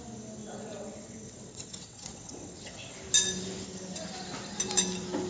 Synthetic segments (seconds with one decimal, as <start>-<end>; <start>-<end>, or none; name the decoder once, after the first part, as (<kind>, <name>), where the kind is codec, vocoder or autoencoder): 0.4-3.0 (vocoder, WaveNeXt)